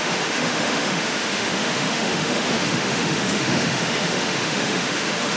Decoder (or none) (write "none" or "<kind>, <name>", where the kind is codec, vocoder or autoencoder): autoencoder, DAC-VAE